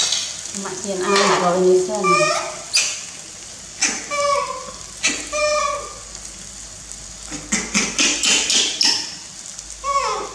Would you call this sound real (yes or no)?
yes